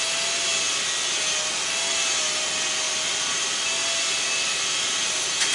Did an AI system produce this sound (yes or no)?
no